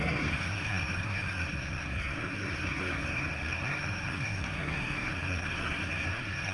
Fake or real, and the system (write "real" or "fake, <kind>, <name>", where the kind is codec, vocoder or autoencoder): fake, codec, SNAC